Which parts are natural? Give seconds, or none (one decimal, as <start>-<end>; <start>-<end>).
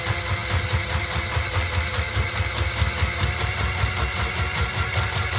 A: 0.0-5.4